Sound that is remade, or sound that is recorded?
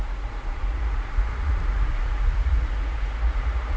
remade